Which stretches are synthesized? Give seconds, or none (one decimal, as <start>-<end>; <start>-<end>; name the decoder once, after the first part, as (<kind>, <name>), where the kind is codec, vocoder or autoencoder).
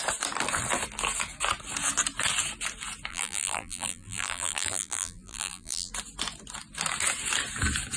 3.1-5.9 (vocoder, BigVGAN v2)